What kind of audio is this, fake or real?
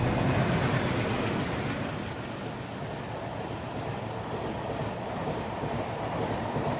real